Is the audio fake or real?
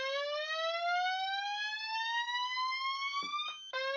real